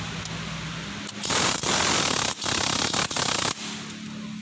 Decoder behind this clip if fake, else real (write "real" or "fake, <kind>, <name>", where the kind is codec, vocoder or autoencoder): real